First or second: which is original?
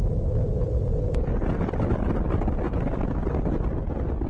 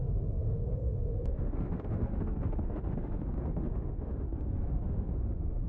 first